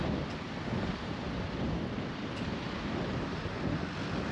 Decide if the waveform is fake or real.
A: real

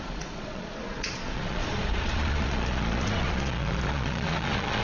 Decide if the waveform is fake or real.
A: fake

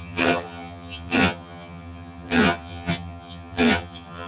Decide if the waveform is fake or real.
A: fake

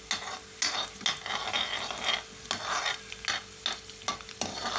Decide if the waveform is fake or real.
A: real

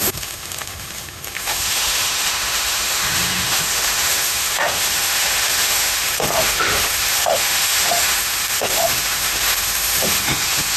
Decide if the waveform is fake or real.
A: fake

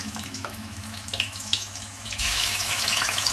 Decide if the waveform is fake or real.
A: fake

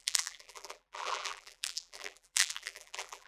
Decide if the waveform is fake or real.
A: fake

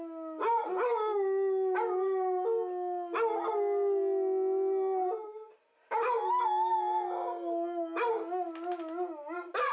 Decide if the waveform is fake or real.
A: real